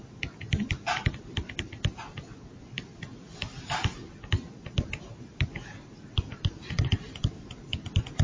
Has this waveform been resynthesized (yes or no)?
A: no